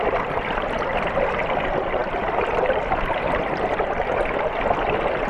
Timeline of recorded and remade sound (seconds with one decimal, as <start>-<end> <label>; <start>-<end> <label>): 0.0-5.3 recorded